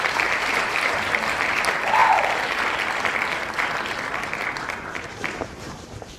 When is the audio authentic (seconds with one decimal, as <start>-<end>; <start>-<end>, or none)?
2.0-4.9